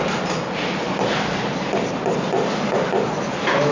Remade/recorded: recorded